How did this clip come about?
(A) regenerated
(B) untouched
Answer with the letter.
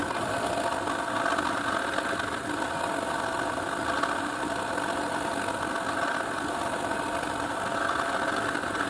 B